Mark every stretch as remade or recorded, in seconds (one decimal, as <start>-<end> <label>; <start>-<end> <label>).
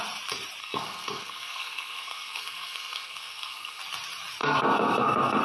0.0-0.6 recorded; 0.6-3.8 remade; 3.8-4.4 recorded; 4.4-5.4 remade